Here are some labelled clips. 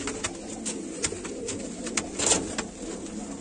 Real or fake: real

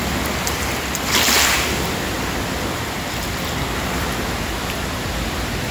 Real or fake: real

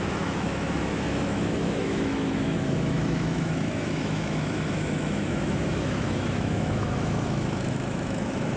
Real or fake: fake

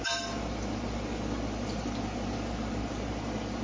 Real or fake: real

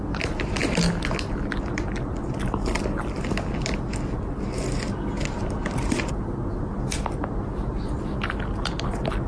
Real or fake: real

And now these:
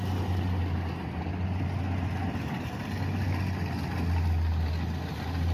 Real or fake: real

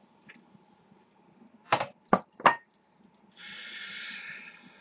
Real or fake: real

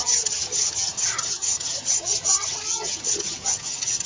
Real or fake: fake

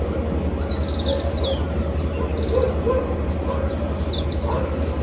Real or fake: real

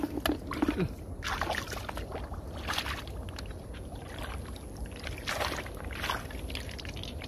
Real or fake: real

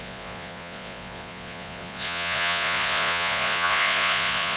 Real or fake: fake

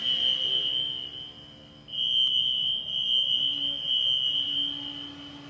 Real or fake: real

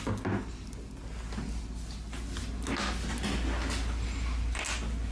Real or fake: real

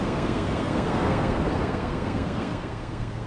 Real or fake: fake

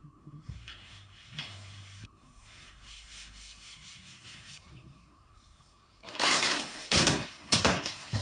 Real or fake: fake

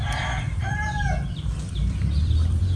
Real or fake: fake